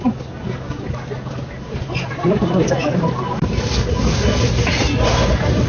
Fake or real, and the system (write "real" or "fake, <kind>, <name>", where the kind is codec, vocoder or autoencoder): real